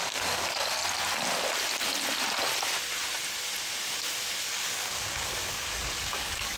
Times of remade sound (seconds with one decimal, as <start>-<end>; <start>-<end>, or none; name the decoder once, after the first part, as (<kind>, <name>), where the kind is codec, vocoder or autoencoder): 0.0-0.8 (codec, DAC); 4.4-6.6